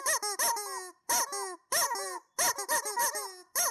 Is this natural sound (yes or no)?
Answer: yes